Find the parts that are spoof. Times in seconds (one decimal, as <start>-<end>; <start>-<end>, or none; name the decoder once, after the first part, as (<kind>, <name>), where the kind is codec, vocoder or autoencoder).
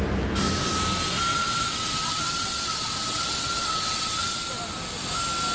1.3-4.6 (vocoder, WaveNeXt)